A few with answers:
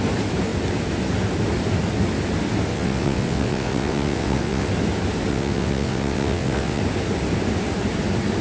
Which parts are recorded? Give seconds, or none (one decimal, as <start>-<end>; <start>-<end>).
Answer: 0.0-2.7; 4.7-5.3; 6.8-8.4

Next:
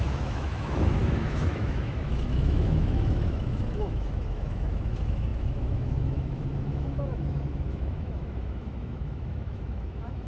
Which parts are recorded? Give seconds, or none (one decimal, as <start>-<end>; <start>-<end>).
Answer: none

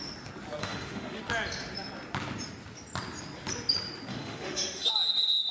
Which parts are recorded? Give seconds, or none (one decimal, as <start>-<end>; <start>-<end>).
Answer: 0.0-0.6; 1.2-4.1; 4.9-5.5

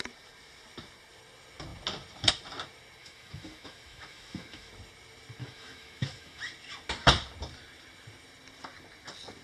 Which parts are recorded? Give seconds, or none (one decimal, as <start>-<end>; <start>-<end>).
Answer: 0.0-3.0; 4.7-5.4; 6.4-9.4

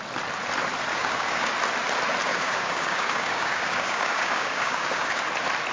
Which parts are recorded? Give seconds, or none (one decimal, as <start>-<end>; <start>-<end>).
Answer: 0.0-0.9; 1.5-2.2; 5.2-5.7